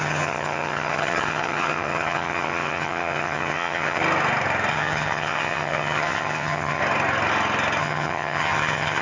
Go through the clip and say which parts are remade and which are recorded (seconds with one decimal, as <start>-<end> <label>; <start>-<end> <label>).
0.0-4.0 remade; 4.0-4.7 recorded; 4.7-6.8 remade; 6.8-7.8 recorded; 7.8-9.0 remade